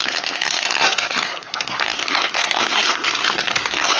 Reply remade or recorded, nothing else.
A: remade